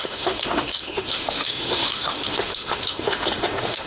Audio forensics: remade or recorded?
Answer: remade